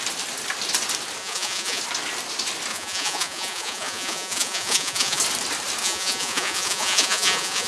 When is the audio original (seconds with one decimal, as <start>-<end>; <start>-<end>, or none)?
0.0-1.2; 1.8-2.7; 5.2-5.8